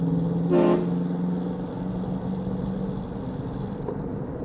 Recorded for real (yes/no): yes